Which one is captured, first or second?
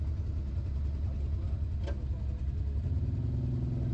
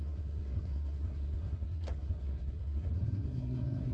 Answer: first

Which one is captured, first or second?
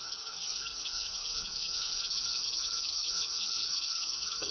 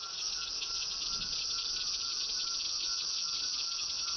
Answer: second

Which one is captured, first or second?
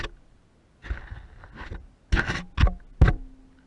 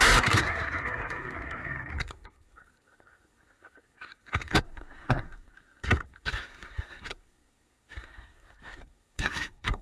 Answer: first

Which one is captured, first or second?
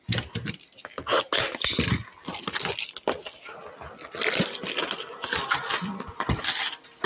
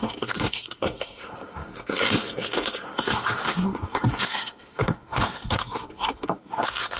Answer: first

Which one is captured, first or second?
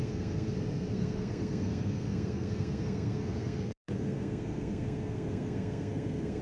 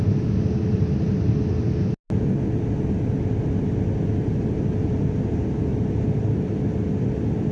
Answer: second